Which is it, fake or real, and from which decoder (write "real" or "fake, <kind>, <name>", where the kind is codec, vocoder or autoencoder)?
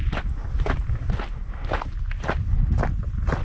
real